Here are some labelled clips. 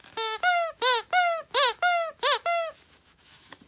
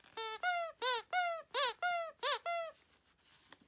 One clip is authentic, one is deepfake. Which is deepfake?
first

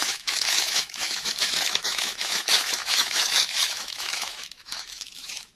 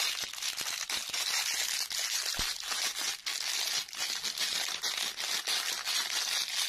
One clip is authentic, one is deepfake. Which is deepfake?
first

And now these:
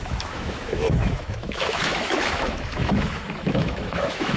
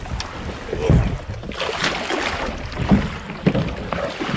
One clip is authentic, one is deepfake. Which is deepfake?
first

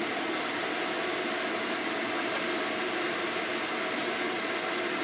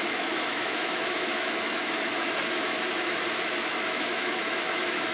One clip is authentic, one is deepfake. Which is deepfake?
second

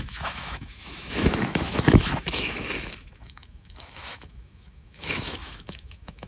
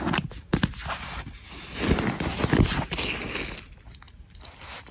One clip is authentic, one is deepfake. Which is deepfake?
first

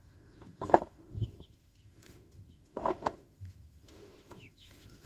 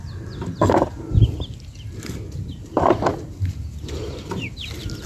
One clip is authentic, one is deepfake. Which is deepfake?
first